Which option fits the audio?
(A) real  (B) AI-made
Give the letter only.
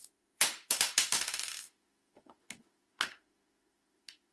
B